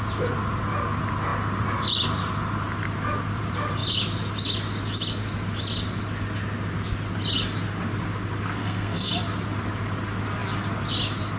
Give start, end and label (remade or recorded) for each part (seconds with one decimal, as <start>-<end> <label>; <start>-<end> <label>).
0.0-8.6 recorded; 8.6-9.1 remade; 9.1-11.4 recorded